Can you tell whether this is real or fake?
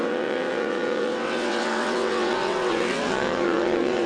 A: fake